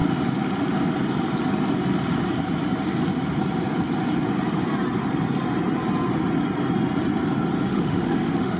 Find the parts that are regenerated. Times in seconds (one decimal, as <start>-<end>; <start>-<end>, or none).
7.7-8.6